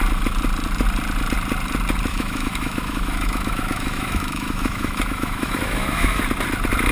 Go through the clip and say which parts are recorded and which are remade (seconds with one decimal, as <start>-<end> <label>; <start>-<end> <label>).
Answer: 0.0-2.1 recorded; 2.1-6.2 remade; 6.2-6.9 recorded